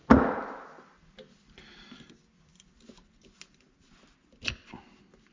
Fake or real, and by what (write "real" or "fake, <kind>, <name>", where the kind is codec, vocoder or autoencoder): real